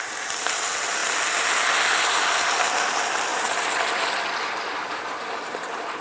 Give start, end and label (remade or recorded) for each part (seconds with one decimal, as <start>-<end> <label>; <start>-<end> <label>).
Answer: 0.0-6.0 recorded